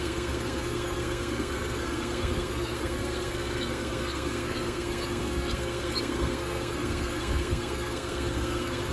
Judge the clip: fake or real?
fake